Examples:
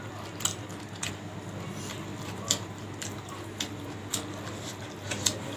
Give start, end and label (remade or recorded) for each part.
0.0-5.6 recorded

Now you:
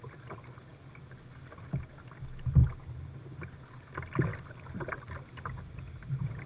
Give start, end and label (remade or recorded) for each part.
0.0-6.5 recorded